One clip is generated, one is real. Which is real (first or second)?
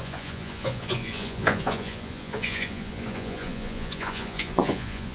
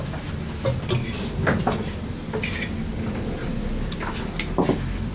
second